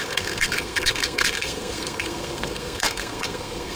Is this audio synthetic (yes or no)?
yes